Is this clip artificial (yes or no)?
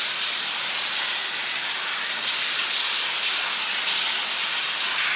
no